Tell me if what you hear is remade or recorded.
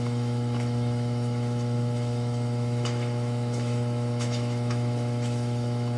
remade